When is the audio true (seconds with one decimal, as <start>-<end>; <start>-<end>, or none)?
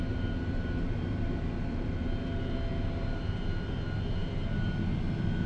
0.0-5.5